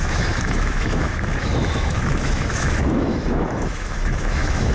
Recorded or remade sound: remade